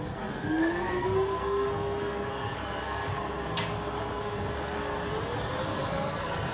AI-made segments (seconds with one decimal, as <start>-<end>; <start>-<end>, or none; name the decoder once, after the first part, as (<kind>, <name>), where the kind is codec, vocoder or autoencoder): 0.0-5.1 (codec, SNAC); 5.7-6.5